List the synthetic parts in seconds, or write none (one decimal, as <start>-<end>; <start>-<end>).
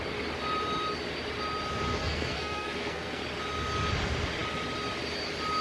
1.9-3.2